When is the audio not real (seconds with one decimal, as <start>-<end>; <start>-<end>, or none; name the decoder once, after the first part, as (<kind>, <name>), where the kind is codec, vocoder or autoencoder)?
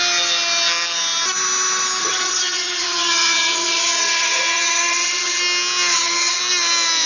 2.0-5.4 (vocoder, HiFi-GAN); 5.9-6.4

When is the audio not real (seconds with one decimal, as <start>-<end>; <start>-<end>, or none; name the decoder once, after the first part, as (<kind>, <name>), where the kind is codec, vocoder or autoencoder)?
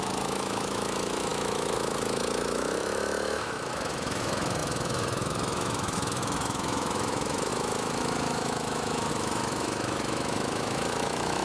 0.0-11.4 (autoencoder, DAC-VAE)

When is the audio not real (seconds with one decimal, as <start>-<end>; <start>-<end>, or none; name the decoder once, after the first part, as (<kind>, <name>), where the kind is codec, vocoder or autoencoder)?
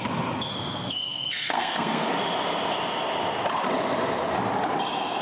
0.5-2.1 (codec, SNAC)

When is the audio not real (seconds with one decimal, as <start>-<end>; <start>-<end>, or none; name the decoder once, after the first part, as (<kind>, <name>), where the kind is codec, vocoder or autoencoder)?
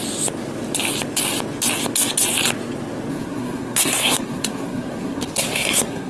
3.1-6.1 (codec, SNAC)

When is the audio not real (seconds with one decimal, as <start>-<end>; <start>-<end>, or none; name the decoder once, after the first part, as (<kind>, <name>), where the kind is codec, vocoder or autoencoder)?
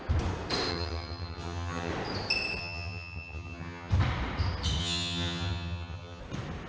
0.7-1.9 (vocoder, HiFi-GAN); 2.6-3.9; 4.8-6.2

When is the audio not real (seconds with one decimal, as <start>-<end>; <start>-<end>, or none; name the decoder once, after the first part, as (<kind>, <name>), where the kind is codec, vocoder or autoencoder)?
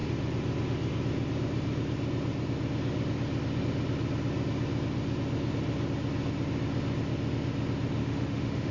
8.0-8.7 (autoencoder, DAC-VAE)